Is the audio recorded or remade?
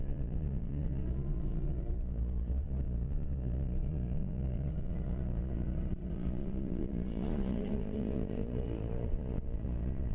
remade